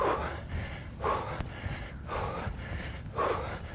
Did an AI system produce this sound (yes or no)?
no